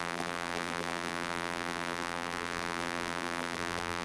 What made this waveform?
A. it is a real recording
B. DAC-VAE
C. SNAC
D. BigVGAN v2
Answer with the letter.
D